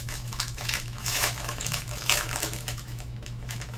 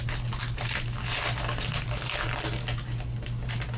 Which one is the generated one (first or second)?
first